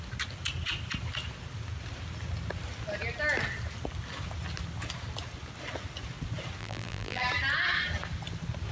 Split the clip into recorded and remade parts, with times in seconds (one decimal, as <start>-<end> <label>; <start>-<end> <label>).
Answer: 0.0-6.6 recorded; 6.6-7.2 remade; 7.2-8.7 recorded